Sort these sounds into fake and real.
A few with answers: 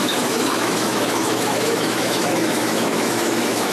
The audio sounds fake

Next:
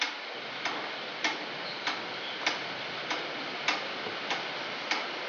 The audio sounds real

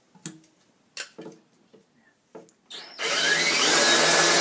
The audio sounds real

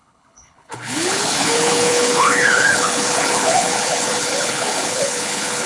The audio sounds fake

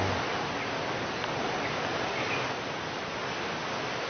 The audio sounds real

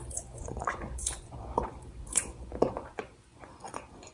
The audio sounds fake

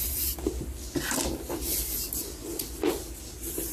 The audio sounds real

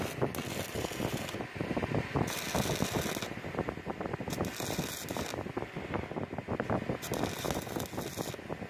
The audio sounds real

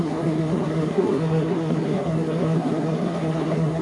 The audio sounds fake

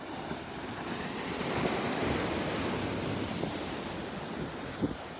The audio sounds real